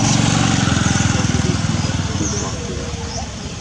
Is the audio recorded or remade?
recorded